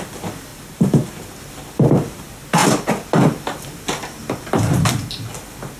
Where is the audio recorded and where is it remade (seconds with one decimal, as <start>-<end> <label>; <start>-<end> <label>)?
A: 0.0-0.5 recorded; 0.5-1.1 remade; 1.1-5.8 recorded